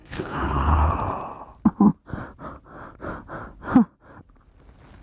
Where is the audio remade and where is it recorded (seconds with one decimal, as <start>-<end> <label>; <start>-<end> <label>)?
0.0-0.9 remade; 0.9-5.0 recorded